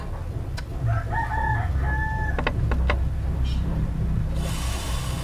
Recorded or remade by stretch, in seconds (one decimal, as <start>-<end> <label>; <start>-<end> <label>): 0.0-5.2 recorded